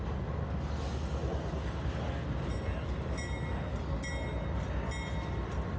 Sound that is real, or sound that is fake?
real